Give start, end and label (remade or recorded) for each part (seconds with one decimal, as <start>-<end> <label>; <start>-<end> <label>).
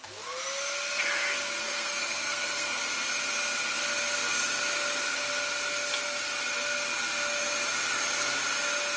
0.0-1.6 recorded; 1.6-2.8 remade; 2.8-9.0 recorded